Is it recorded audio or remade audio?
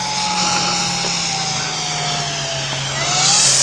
recorded